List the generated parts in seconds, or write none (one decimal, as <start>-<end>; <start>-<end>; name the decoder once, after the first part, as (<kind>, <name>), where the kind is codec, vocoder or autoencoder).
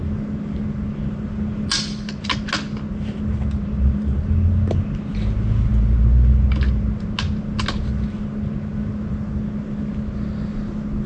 none